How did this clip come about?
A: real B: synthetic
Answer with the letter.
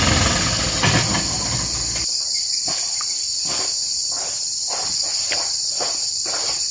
A